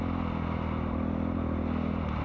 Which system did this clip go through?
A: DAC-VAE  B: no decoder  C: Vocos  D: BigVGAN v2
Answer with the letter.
B